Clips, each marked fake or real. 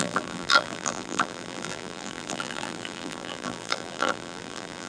fake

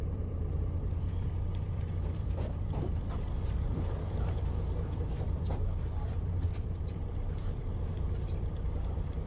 fake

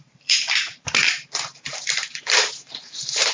fake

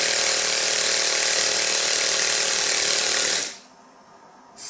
fake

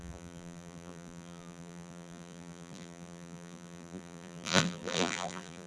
fake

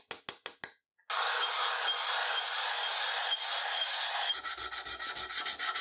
real